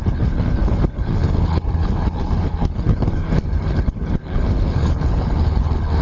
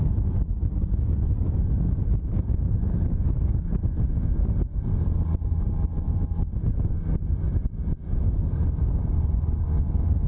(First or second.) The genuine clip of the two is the second